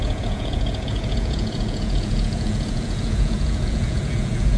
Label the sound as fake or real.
fake